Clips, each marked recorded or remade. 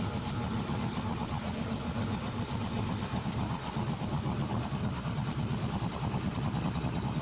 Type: recorded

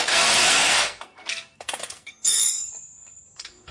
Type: remade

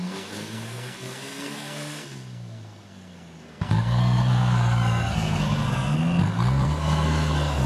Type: remade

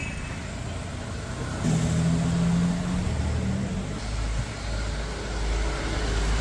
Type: recorded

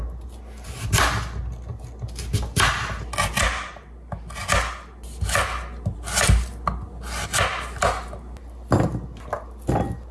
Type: recorded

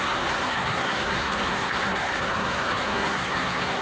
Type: remade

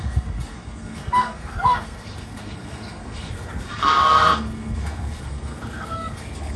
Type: remade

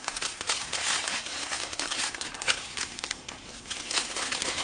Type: remade